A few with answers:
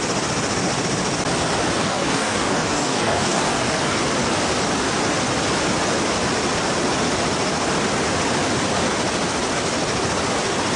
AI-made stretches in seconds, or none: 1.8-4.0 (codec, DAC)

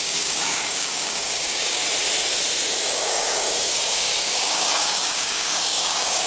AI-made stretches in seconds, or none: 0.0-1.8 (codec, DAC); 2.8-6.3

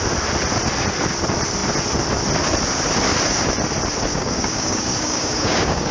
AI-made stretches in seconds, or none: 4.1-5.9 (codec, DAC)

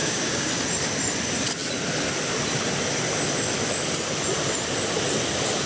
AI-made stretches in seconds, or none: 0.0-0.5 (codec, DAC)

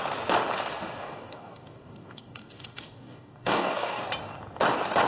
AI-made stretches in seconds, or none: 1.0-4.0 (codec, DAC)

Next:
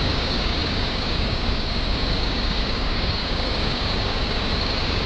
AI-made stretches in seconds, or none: 0.0-5.1 (codec, DAC)